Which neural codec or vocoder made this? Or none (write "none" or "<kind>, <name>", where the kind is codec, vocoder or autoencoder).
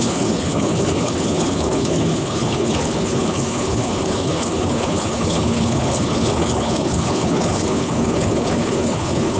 codec, HILCodec